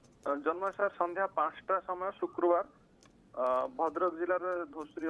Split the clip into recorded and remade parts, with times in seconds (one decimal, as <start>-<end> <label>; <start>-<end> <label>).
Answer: 0.0-3.0 remade; 3.0-4.3 recorded; 4.3-5.1 remade